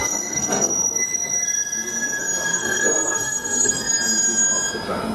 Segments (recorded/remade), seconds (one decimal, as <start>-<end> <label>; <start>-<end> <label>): 0.0-0.7 remade; 0.7-2.5 recorded; 2.5-3.9 remade; 3.9-5.1 recorded